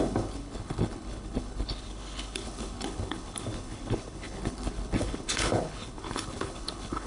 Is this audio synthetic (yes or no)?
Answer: yes